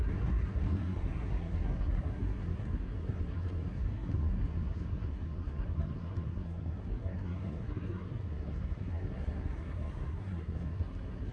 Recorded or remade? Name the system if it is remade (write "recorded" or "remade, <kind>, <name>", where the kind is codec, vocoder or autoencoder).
remade, codec, SNAC